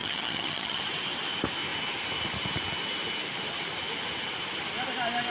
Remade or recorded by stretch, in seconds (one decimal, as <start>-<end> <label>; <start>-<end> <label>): 0.0-0.8 remade; 0.8-5.3 recorded

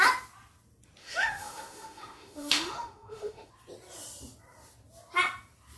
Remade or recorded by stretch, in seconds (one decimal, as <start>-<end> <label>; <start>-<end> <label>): 0.0-1.0 recorded; 1.0-3.5 remade; 3.5-5.8 recorded

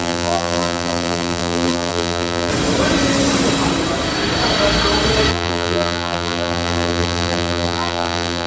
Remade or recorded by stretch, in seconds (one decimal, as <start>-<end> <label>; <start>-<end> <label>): 0.0-2.5 remade; 2.5-5.3 recorded; 5.3-8.5 remade

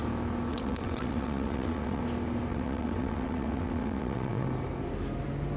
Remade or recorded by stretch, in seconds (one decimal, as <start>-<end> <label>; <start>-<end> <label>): 0.0-0.5 recorded; 0.5-2.0 remade; 2.0-2.5 recorded; 2.5-4.5 remade; 4.5-5.6 recorded

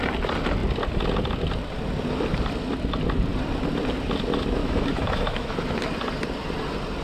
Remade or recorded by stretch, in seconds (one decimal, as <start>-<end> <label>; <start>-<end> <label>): 0.0-4.6 recorded; 4.6-5.5 remade; 5.5-7.0 recorded

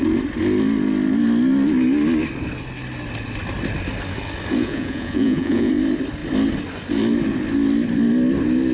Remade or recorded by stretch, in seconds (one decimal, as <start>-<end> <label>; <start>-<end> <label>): 0.0-4.6 recorded; 4.6-5.7 remade; 5.7-8.7 recorded

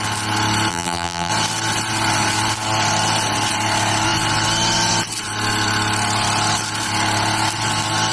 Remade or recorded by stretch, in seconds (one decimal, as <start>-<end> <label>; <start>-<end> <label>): 0.0-0.7 recorded; 0.7-1.3 remade; 1.3-8.1 recorded